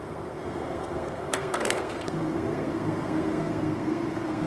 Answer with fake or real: fake